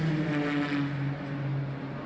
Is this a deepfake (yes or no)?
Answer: no